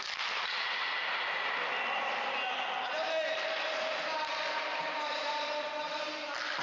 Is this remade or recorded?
recorded